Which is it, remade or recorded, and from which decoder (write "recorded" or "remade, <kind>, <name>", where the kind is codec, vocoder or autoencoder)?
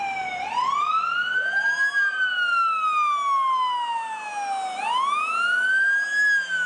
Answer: recorded